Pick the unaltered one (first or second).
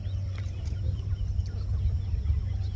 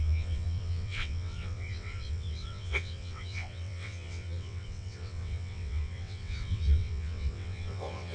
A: first